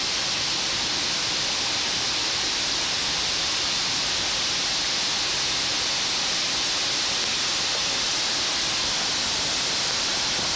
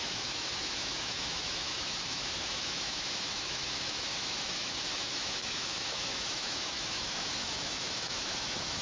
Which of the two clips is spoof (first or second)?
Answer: second